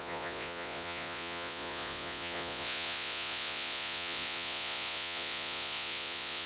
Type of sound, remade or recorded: remade